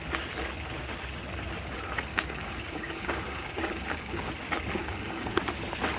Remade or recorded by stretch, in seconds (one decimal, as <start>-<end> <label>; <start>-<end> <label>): 0.0-2.1 recorded; 2.1-4.3 remade; 4.3-4.8 recorded; 4.8-5.4 remade; 5.4-6.0 recorded